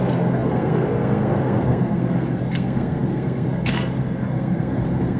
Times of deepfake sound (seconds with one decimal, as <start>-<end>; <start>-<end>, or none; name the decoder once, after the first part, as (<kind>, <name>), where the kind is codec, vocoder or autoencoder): 0.0-5.2 (codec, SNAC)